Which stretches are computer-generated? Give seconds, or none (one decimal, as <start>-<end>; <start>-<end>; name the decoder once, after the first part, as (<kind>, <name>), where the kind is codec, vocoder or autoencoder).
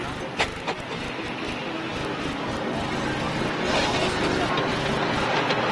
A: none